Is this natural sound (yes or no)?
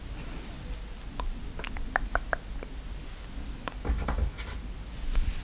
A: yes